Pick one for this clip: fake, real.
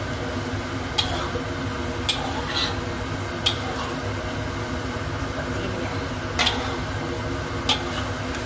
real